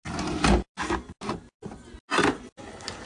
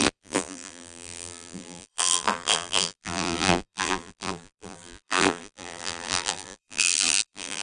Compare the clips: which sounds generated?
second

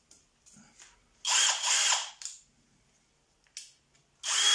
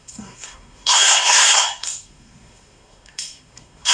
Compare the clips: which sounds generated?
second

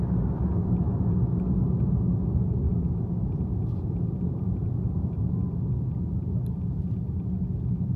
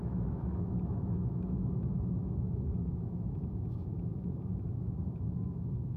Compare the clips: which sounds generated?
second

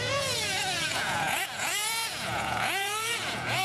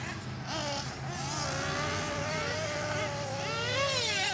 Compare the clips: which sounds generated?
first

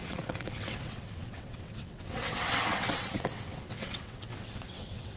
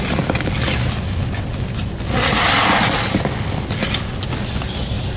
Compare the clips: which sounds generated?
first